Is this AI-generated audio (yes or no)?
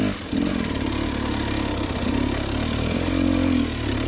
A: no